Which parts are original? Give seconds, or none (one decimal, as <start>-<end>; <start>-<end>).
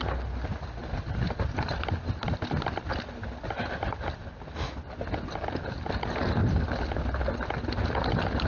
0.0-6.4; 7.2-8.5